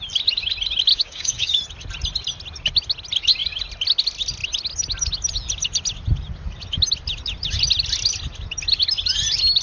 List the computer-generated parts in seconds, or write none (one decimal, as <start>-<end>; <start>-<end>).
0.9-1.6